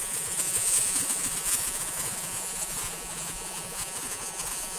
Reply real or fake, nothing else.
fake